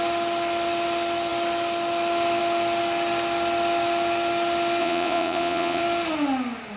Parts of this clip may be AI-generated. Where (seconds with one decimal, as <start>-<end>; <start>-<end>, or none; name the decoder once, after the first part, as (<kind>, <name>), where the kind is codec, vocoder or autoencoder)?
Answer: 4.8-5.8 (vocoder, Vocos)